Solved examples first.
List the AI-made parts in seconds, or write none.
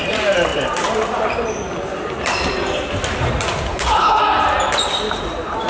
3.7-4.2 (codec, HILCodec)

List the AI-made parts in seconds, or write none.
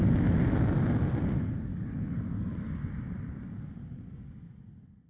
1.7-2.2 (codec, HILCodec)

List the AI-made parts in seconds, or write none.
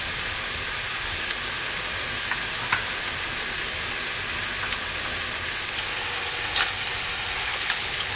7.5-8.2 (codec, HILCodec)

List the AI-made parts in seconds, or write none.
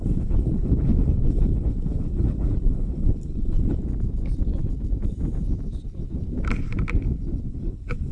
0.0-3.8 (codec, HILCodec); 7.5-8.1